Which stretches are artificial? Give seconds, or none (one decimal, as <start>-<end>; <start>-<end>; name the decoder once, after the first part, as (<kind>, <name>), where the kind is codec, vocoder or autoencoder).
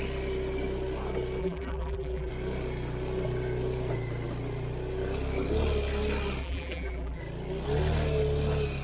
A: 1.4-2.3 (vocoder, BigVGAN v2); 6.4-7.2